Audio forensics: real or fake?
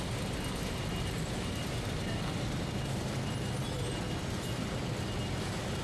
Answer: real